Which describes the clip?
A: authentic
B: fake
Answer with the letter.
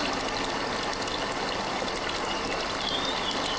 A